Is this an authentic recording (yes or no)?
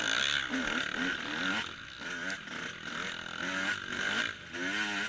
yes